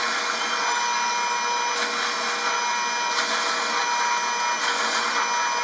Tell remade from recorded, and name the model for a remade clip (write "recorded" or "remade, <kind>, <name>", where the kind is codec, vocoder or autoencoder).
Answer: recorded